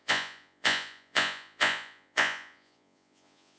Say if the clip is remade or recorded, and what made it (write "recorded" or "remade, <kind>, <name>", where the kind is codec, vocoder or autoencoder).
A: remade, vocoder, Vocos